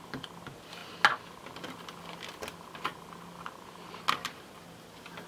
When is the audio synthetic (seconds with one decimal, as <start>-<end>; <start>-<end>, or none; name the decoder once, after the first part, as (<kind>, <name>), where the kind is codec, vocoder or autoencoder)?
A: none